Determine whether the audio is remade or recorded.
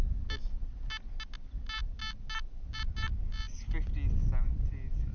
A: recorded